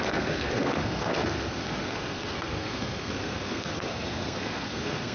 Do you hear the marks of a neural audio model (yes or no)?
yes